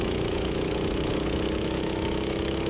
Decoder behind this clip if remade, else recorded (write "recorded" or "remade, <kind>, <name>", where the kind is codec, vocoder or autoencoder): remade, autoencoder, DAC-VAE